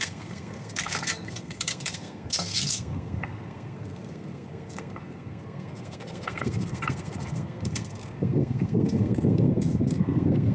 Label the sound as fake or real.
fake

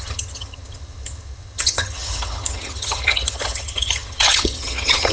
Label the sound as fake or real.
fake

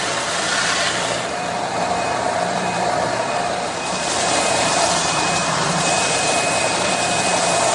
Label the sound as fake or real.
fake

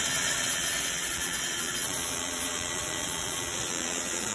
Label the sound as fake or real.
fake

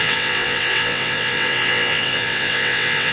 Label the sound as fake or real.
fake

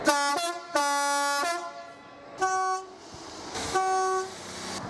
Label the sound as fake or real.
real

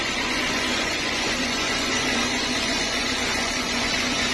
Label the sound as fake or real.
fake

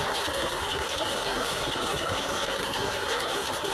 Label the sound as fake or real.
fake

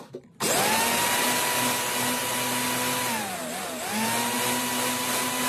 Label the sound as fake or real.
real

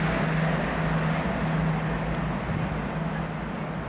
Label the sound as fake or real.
real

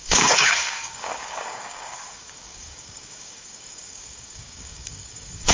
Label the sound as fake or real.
fake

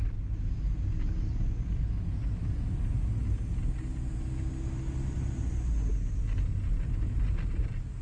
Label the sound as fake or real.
real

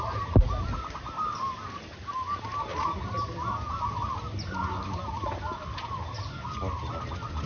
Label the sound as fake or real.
real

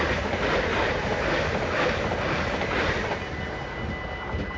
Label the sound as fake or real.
real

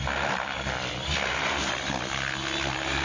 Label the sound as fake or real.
real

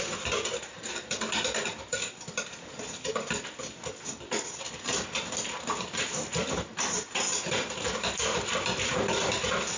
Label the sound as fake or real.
real